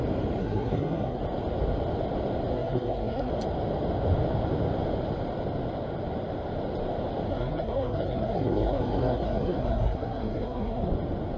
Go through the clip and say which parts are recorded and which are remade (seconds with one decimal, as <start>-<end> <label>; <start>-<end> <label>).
0.0-0.4 recorded; 0.4-1.2 remade; 1.2-2.5 recorded; 2.5-3.3 remade; 3.3-7.3 recorded; 7.3-10.9 remade; 10.9-11.4 recorded